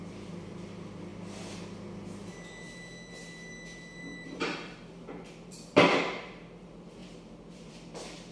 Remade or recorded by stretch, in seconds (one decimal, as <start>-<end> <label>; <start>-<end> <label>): 0.0-1.1 remade; 1.1-4.0 recorded; 4.0-8.3 remade

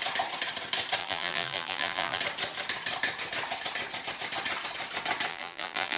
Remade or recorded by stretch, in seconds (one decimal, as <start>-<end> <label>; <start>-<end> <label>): 0.0-1.0 recorded; 1.0-2.2 remade; 2.2-5.3 recorded; 5.3-6.0 remade

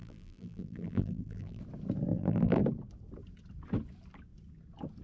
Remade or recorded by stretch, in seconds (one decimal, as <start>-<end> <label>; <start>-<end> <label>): 0.0-1.6 remade; 1.6-2.1 recorded; 2.1-2.6 remade; 2.6-5.0 recorded

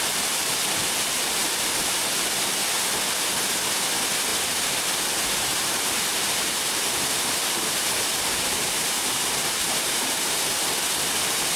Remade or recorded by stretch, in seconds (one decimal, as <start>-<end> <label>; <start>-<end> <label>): 0.0-4.3 recorded; 4.3-4.9 remade; 4.9-5.5 recorded; 5.5-10.3 remade; 10.3-11.6 recorded

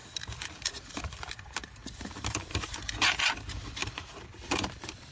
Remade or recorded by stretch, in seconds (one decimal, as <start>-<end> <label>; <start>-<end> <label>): 0.0-1.8 remade; 1.8-2.5 recorded; 2.5-5.1 remade

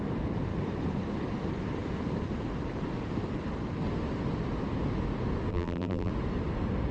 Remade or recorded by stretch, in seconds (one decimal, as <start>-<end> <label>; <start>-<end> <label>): 0.0-5.5 recorded; 5.5-6.1 remade; 6.1-6.9 recorded